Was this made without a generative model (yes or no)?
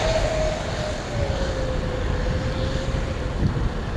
yes